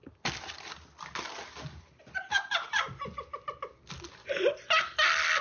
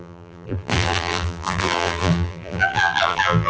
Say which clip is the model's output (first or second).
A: second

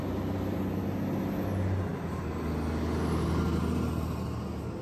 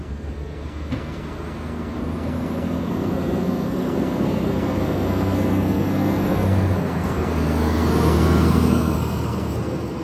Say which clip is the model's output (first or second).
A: second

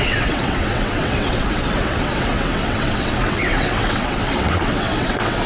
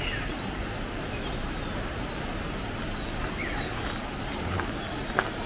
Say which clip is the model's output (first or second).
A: first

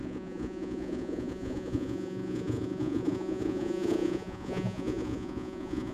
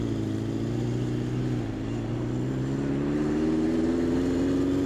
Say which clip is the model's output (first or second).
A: first